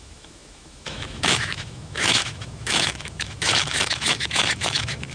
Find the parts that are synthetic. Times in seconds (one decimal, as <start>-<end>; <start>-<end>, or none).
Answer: 0.0-5.1